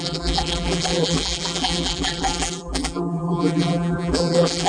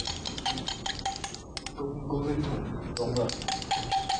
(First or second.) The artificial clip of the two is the first